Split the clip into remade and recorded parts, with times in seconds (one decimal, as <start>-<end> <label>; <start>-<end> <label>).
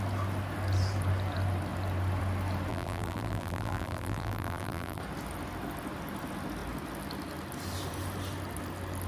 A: 0.0-2.7 recorded; 2.7-5.0 remade; 5.0-9.1 recorded